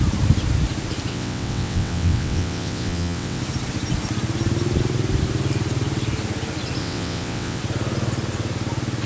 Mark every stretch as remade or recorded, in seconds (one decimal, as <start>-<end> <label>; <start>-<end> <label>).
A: 0.0-1.1 recorded; 1.1-3.4 remade; 3.4-6.8 recorded; 6.8-7.6 remade; 7.6-9.1 recorded

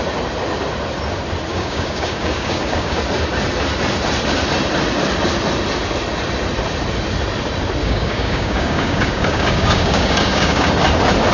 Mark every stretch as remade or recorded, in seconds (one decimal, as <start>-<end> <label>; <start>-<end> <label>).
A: 0.0-1.5 recorded; 1.5-3.0 remade; 3.0-7.8 recorded; 7.8-10.7 remade; 10.7-11.3 recorded

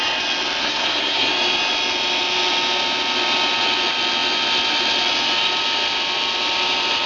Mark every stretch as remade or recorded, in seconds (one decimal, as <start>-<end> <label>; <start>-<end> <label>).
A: 0.0-0.6 recorded; 0.6-1.3 remade; 1.3-7.1 recorded

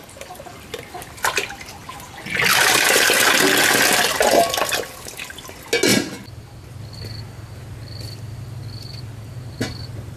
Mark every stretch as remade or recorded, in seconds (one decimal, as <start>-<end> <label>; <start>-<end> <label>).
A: 0.0-5.9 recorded; 5.9-6.8 remade; 6.8-10.2 recorded

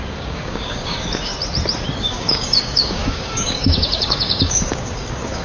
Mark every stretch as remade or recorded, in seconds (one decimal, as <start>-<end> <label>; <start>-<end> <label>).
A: 0.0-1.3 remade; 1.3-2.0 recorded; 2.0-5.4 remade

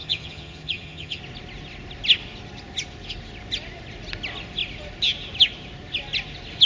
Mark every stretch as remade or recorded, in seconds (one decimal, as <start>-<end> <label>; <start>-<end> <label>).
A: 0.0-1.2 remade; 1.2-6.7 recorded